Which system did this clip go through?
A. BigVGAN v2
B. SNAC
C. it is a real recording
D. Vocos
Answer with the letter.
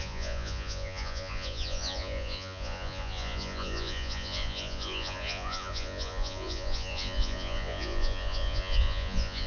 D